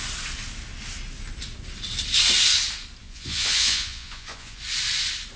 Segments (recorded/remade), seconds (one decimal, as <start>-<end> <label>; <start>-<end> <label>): 0.0-3.0 recorded; 3.0-4.6 remade; 4.6-5.4 recorded